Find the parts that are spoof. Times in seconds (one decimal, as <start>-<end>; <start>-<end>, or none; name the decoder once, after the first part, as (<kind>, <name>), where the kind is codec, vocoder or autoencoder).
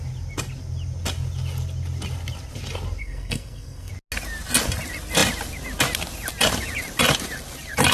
3.0-3.9 (codec, SNAC)